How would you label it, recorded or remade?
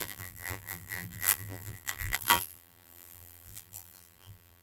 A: remade